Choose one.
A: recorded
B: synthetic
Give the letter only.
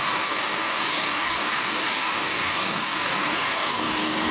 B